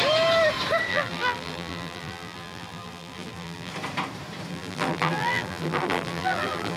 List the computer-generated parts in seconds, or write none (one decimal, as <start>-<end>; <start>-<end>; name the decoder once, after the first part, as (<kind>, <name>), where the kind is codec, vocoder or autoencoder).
0.9-3.7 (vocoder, BigVGAN v2); 4.5-6.8